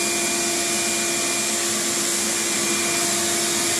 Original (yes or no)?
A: yes